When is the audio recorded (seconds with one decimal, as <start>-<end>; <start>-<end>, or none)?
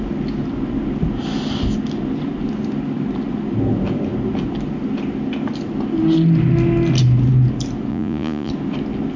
0.0-7.9; 8.5-9.2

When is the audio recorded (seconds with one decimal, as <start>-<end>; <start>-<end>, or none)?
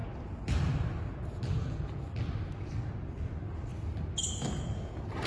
0.0-5.3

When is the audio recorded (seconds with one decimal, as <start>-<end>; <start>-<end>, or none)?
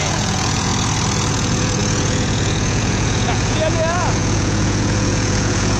0.7-1.4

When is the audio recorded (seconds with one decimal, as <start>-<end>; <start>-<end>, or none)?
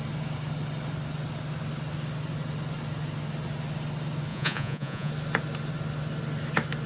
0.0-4.3; 5.1-6.9